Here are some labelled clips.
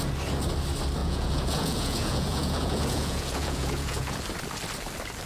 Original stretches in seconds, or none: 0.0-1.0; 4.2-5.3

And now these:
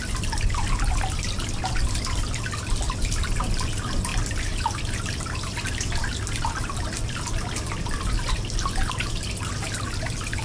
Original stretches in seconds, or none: 0.0-10.4

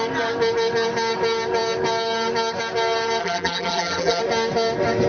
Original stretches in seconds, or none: 0.0-3.2; 4.2-5.1

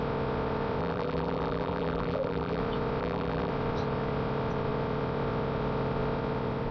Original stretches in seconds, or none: 0.0-0.8; 2.6-3.0; 3.5-6.7

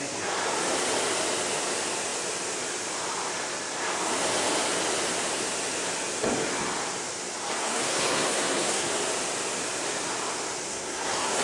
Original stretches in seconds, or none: 0.0-7.6; 8.9-10.7

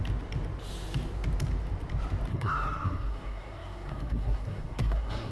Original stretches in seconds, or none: 0.0-2.3